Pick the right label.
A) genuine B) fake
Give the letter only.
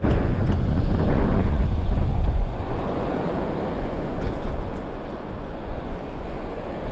B